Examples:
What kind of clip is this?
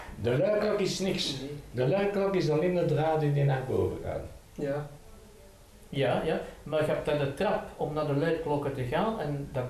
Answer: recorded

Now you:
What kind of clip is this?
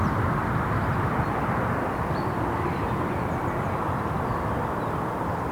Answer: remade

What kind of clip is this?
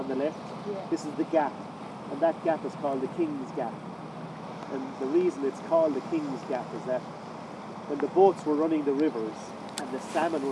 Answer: recorded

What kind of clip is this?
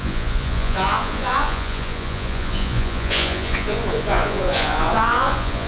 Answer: remade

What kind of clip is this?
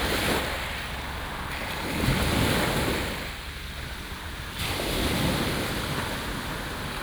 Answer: recorded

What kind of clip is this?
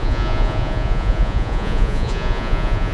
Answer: remade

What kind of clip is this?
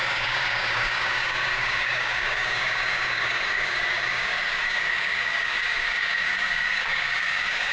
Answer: remade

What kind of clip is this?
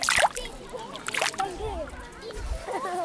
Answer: recorded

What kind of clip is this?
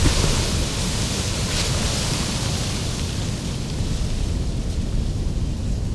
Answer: recorded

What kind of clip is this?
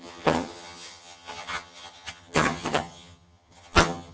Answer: remade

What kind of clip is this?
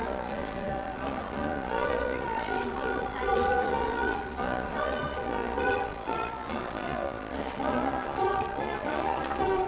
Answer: remade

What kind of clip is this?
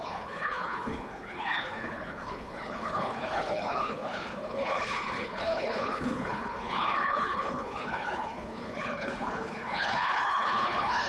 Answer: remade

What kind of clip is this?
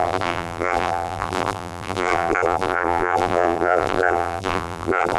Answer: remade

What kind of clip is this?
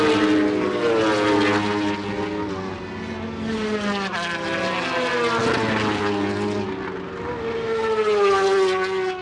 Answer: recorded